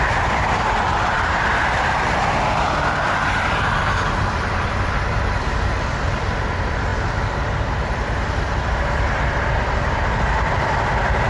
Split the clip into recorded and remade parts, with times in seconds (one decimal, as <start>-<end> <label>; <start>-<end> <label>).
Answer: 0.0-11.3 remade